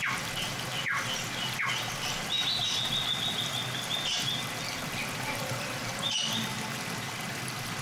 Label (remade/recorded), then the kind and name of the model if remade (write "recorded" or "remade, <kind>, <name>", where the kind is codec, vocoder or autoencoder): recorded